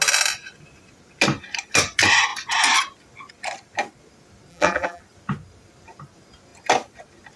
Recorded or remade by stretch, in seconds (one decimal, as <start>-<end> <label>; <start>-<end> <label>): 0.0-4.5 recorded; 4.5-5.0 remade; 5.0-7.4 recorded